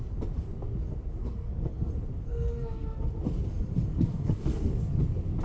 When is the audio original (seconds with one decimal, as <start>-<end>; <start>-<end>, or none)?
0.0-1.2; 1.9-2.3; 3.0-3.9; 5.0-5.4